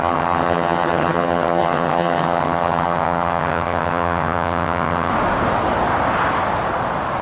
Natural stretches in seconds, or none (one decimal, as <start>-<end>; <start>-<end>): 5.1-7.2